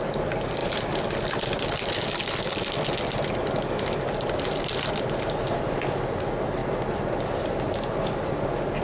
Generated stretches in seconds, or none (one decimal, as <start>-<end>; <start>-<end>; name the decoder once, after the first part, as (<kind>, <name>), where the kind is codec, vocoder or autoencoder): none